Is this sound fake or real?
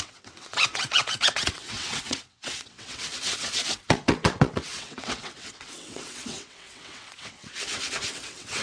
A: fake